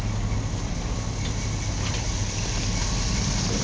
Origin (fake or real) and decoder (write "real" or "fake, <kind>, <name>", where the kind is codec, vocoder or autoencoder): real